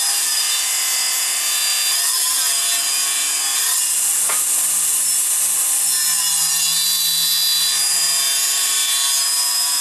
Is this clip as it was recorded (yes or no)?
yes